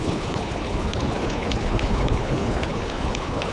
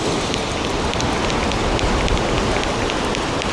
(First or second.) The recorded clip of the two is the second